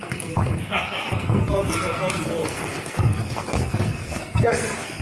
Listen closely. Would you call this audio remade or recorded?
remade